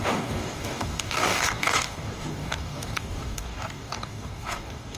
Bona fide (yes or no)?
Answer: no